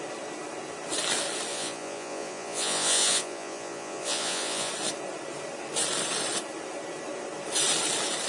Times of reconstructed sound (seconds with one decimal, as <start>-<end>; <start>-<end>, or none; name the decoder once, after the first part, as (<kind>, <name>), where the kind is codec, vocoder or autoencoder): 1.5-4.7 (vocoder, Vocos)